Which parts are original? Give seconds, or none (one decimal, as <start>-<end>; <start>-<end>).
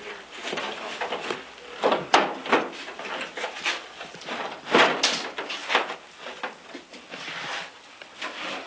5.6-6.9